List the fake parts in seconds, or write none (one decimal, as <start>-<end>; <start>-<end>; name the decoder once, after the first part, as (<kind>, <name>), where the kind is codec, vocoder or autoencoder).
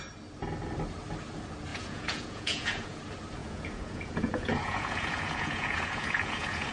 1.7-3.0 (vocoder, Vocos); 3.4-6.7